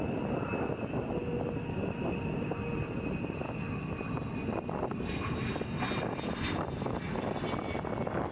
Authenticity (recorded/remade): recorded